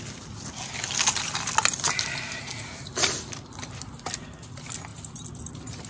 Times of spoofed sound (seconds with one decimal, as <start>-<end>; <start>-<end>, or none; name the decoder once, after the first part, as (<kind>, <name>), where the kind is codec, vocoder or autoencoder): none